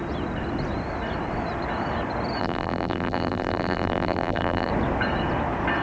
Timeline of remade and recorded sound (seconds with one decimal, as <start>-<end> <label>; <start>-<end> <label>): 0.0-2.4 recorded; 2.4-4.7 remade; 4.7-5.8 recorded